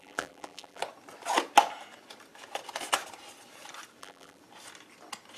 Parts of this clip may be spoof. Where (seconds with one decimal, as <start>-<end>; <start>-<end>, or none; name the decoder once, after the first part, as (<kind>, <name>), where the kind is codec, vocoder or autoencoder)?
0.0-0.8 (vocoder, BigVGAN v2); 4.0-4.4